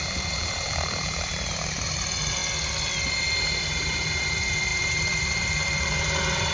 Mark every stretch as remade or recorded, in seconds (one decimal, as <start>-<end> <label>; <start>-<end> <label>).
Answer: 0.0-2.4 remade; 2.4-3.6 recorded; 3.6-6.5 remade